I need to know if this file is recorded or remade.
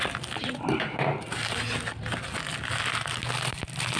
recorded